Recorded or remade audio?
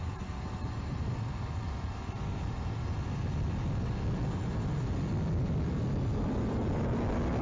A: recorded